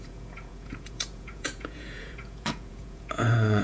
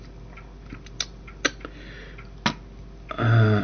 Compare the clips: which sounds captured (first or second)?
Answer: second